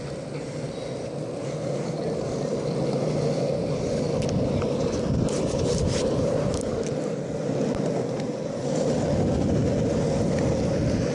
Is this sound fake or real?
real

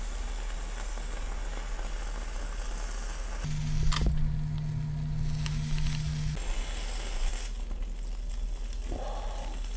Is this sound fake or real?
real